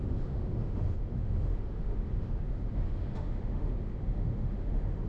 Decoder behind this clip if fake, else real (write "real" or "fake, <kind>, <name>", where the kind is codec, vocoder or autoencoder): fake, autoencoder, DAC-VAE